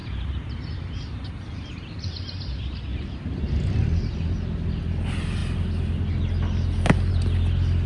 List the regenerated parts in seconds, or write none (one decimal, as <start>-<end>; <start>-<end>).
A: 0.0-2.0